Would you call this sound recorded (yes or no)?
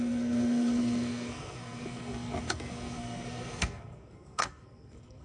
no